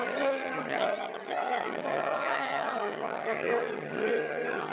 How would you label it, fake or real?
fake